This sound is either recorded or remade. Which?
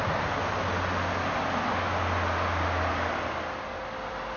recorded